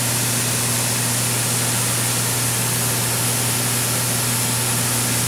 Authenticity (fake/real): real